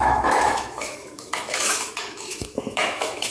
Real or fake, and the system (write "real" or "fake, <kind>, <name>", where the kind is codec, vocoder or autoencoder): fake, autoencoder, DAC-VAE